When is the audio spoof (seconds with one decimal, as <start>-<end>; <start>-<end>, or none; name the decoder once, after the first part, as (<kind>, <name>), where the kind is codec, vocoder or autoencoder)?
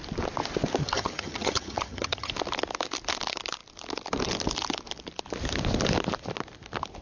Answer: 0.8-2.3 (vocoder, HiFi-GAN)